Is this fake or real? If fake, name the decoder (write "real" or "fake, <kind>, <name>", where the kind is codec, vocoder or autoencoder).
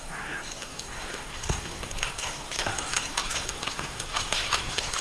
fake, codec, SNAC